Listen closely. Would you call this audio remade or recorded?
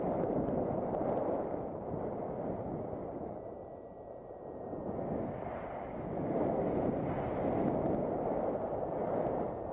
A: recorded